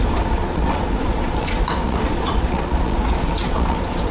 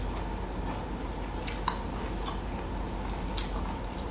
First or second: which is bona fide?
second